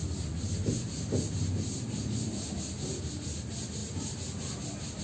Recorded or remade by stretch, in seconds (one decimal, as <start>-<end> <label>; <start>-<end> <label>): 0.0-5.0 recorded